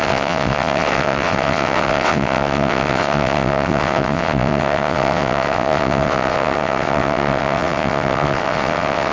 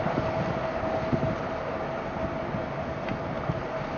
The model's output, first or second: first